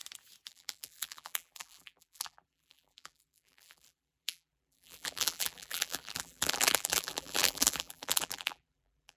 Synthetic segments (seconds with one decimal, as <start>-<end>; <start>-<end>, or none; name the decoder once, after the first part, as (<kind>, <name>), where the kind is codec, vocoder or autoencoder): 0.5-9.2 (vocoder, BigVGAN v2)